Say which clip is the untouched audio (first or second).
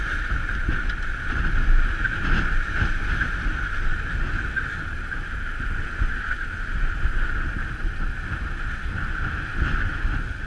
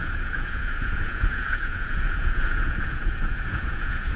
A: first